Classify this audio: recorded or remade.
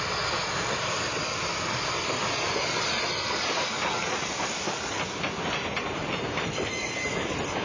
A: recorded